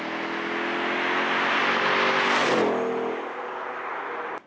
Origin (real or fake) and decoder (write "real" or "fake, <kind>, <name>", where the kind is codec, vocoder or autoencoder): real